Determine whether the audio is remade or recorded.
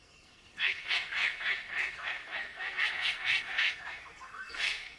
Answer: remade